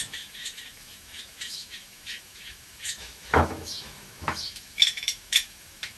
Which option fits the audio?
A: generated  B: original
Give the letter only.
A